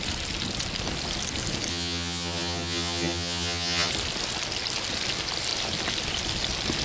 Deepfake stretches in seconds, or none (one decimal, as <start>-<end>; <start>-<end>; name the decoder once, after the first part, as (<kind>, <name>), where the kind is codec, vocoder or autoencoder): 1.7-3.9 (vocoder, HiFi-GAN)